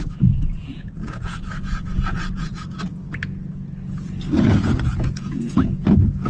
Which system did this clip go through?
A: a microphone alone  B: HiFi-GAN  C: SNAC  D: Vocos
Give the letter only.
D